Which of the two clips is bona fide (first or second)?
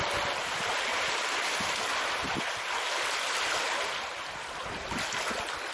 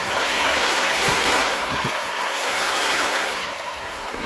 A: first